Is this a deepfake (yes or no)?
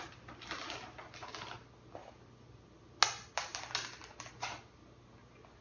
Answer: no